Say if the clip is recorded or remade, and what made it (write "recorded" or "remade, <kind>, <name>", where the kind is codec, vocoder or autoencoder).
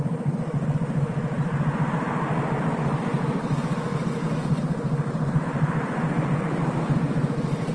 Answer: recorded